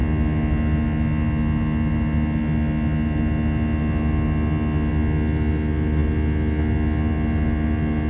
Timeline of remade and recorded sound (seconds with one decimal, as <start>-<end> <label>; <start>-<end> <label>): 0.0-8.1 recorded